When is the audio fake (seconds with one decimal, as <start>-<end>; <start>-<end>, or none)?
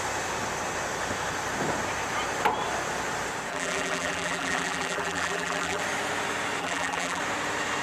3.5-5.8; 6.6-7.2